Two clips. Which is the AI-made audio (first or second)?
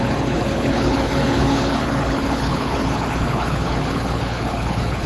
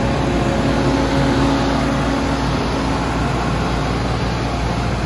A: first